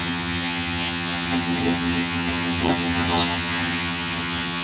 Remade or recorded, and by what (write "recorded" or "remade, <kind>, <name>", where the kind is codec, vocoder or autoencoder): remade, vocoder, HiFi-GAN